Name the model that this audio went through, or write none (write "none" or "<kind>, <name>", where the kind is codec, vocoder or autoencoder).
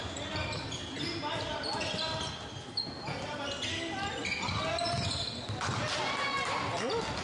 none